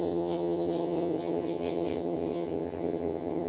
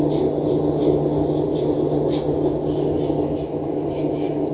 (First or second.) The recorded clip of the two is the second